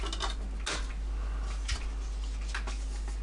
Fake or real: real